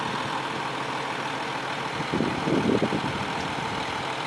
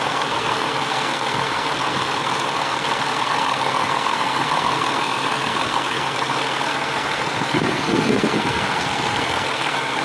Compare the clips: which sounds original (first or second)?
first